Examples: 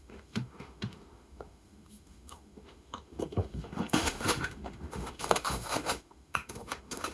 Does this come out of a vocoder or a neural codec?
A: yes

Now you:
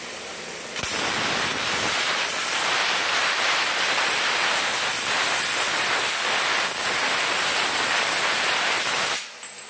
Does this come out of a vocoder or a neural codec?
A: no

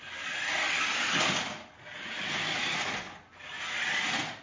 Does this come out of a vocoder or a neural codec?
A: no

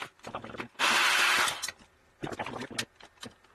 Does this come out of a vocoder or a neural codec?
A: no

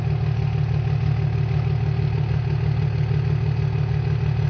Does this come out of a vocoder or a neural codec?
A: no